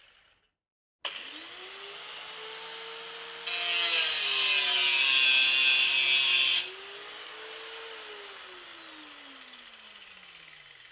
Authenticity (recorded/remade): recorded